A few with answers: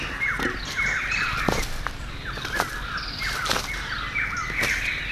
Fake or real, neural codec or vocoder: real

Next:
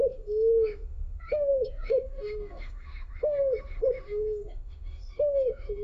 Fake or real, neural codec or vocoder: fake, autoencoder, DAC-VAE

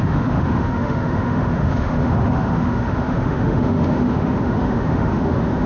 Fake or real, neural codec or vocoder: fake, autoencoder, DAC-VAE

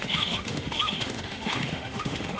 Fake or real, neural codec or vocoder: fake, autoencoder, DAC-VAE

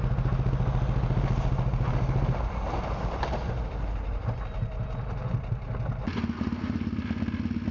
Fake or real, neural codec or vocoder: real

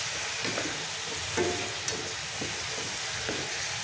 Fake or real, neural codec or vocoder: real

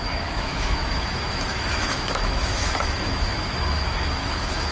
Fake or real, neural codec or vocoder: fake, autoencoder, DAC-VAE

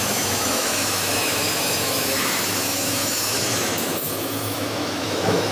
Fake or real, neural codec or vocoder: fake, autoencoder, DAC-VAE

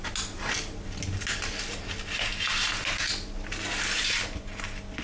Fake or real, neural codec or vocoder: real